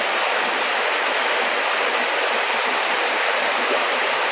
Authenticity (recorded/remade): recorded